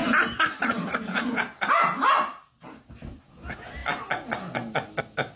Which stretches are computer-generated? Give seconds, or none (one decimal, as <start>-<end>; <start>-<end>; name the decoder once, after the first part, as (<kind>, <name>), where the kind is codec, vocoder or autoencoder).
none